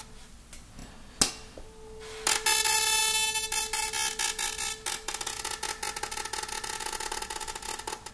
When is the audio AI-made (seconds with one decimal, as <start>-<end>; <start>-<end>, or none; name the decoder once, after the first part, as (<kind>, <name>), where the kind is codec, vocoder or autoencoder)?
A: none

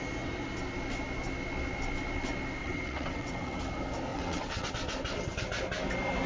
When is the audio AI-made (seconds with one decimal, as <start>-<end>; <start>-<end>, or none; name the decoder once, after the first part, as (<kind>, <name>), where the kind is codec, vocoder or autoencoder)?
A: 2.6-3.6 (vocoder, WaveNeXt); 4.1-4.7